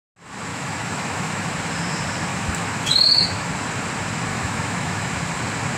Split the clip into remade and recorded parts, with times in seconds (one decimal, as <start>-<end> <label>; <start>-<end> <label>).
0.0-0.5 recorded; 0.5-1.5 remade; 1.5-2.3 recorded; 2.3-3.5 remade; 3.5-4.3 recorded; 4.3-5.1 remade; 5.1-5.8 recorded